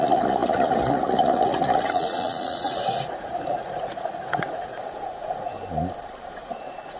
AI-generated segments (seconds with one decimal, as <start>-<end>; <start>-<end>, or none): 0.0-5.5; 6.3-7.0